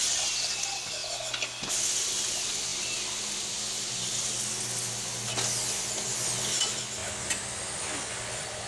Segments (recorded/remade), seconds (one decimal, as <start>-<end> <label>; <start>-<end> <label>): 0.0-8.7 recorded